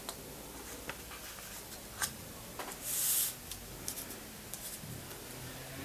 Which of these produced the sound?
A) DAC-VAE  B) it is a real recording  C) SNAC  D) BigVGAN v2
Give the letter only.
B